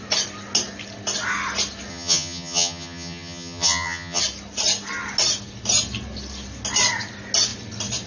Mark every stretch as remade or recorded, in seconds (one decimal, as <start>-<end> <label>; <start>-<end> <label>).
0.0-1.9 recorded; 1.9-4.2 remade; 4.2-8.1 recorded